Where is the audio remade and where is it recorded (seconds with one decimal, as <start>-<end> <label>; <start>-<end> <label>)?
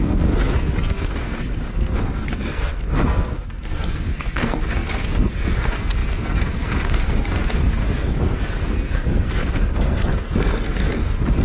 0.0-11.4 remade